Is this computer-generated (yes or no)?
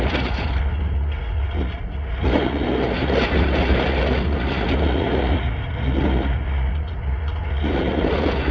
yes